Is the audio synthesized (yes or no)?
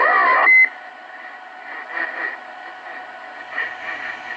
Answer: no